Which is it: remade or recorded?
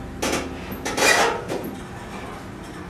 recorded